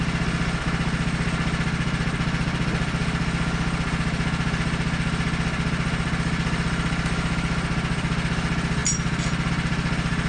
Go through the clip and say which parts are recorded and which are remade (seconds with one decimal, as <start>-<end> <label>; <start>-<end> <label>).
0.0-10.3 recorded